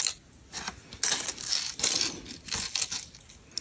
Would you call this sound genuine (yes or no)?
yes